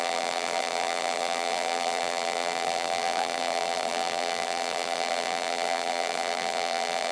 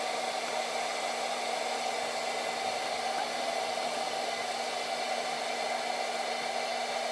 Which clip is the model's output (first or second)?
first